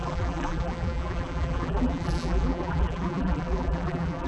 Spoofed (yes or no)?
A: yes